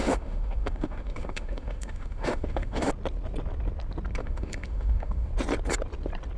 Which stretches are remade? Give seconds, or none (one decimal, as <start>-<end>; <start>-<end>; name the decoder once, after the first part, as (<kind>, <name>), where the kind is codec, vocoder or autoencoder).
0.0-2.9 (autoencoder, DAC-VAE); 4.2-5.3

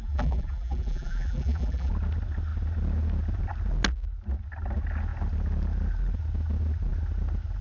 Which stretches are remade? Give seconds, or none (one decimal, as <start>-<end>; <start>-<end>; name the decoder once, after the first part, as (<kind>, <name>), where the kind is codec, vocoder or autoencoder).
0.0-1.9 (vocoder, BigVGAN v2)

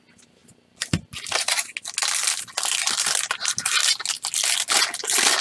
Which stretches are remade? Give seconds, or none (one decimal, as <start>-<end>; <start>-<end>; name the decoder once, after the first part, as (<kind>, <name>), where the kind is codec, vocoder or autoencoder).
none

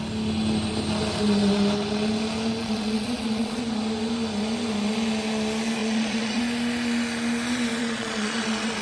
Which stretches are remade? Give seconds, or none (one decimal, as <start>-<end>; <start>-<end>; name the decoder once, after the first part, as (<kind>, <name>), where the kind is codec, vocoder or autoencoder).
2.6-3.6 (vocoder, Vocos); 5.8-6.4; 7.8-8.8

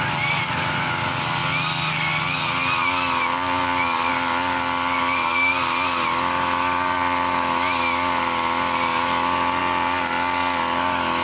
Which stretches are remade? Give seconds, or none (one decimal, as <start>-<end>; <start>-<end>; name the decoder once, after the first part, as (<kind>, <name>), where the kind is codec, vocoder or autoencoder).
none

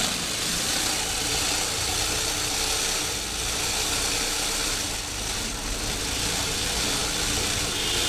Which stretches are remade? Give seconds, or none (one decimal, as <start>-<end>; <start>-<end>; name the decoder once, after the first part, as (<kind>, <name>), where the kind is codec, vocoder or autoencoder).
none